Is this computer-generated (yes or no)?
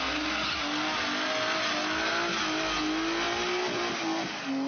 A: no